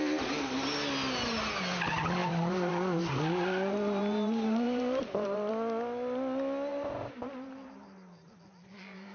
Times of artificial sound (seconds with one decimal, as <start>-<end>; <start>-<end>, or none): 2.2-5.5; 6.7-8.3